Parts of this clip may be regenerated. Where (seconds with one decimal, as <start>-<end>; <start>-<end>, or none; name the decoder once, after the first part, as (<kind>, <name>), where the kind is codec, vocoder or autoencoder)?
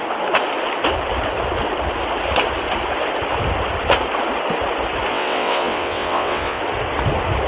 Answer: 5.1-6.6 (vocoder, WaveNeXt)